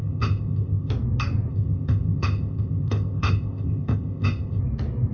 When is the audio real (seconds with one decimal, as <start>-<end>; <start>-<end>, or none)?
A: 0.9-1.5; 4.6-5.1